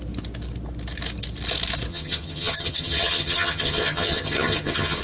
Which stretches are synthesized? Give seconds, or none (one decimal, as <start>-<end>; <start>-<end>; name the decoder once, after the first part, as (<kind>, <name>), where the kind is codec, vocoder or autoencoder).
1.9-5.0 (vocoder, HiFi-GAN)